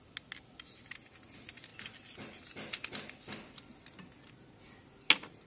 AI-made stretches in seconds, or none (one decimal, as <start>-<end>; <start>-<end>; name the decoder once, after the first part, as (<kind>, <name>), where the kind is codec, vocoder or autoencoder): none